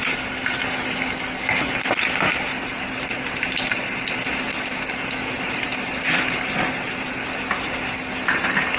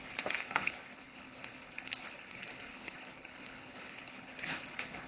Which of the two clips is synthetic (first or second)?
second